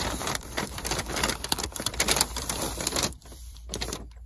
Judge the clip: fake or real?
fake